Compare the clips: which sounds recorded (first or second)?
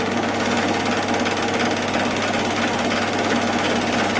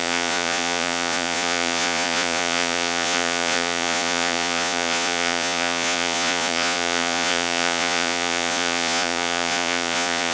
first